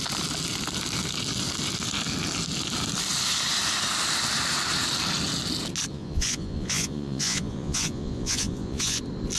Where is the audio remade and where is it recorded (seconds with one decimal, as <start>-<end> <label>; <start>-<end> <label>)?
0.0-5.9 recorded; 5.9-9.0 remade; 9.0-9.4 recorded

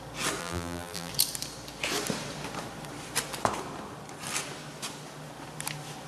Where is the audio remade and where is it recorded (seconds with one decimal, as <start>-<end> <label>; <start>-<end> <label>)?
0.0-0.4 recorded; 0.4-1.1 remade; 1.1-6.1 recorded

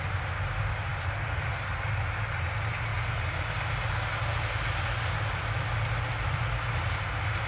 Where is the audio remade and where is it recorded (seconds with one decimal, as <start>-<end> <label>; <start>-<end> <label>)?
0.0-7.5 recorded

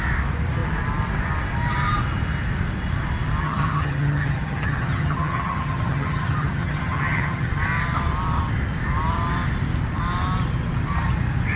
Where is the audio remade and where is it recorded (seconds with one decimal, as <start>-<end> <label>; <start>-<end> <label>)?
0.0-3.4 recorded; 3.4-7.5 remade; 7.5-11.6 recorded

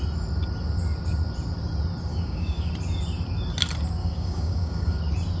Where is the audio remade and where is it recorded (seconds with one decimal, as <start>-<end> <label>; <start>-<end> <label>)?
0.0-2.1 recorded; 2.1-2.7 remade; 2.7-4.0 recorded; 4.0-5.0 remade; 5.0-5.4 recorded

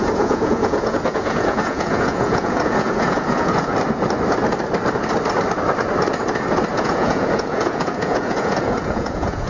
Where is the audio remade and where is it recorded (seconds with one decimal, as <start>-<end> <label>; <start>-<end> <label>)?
0.0-3.7 remade; 3.7-6.7 recorded; 6.7-9.5 remade

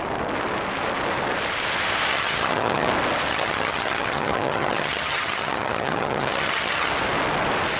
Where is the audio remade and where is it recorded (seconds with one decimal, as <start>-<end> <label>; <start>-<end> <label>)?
0.0-2.1 recorded; 2.1-2.9 remade; 2.9-3.3 recorded; 3.3-6.9 remade; 6.9-7.8 recorded